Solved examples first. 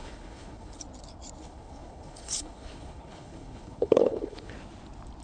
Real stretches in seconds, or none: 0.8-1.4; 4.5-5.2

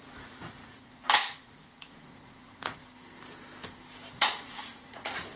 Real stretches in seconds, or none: 2.8-4.1

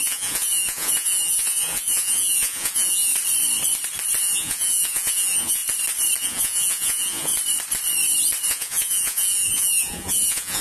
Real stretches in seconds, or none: 3.1-4.2; 5.6-6.2; 7.3-8.5

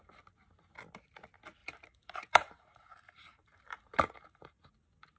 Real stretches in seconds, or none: 0.0-1.6; 4.7-5.2

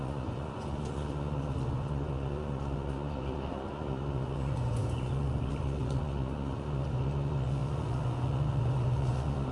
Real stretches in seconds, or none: none

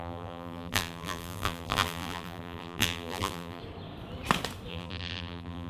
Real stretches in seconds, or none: 3.6-4.7

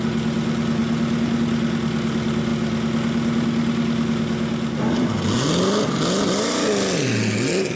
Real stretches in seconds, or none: 0.0-7.8

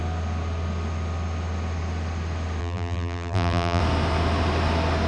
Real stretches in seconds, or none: 0.0-2.6; 3.8-5.1